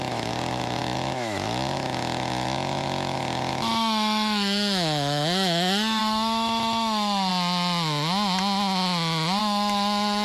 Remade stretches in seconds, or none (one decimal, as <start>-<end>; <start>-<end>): 0.0-7.3; 9.4-10.2